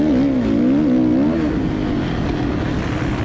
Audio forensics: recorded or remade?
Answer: recorded